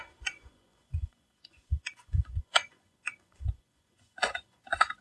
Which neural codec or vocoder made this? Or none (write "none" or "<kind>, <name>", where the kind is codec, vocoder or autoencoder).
vocoder, Vocos